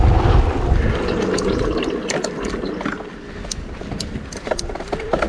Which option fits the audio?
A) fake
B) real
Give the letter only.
B